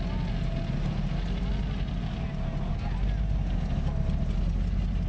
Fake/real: real